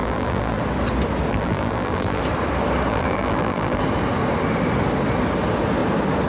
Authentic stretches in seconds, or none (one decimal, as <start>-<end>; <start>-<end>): 0.6-1.3; 2.2-2.9; 3.8-6.3